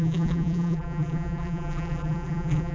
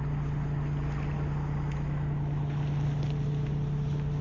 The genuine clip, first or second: second